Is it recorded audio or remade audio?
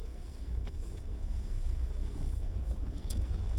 remade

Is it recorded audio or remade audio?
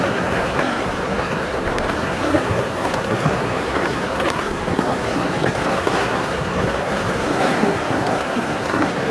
remade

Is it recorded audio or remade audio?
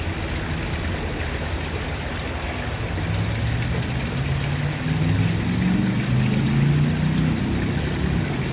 recorded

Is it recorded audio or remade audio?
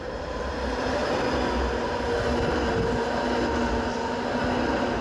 recorded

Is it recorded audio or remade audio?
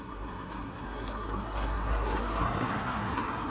remade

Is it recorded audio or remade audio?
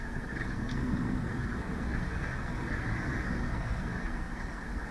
remade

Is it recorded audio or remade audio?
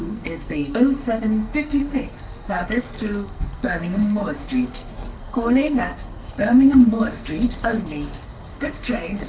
remade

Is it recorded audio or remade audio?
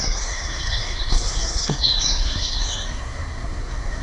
remade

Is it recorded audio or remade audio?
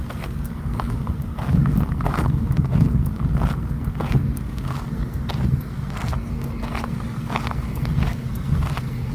remade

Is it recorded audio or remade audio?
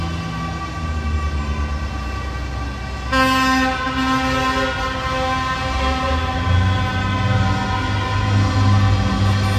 recorded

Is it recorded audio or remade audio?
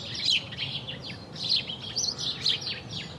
recorded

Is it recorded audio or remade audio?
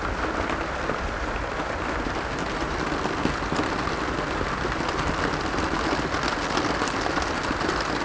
recorded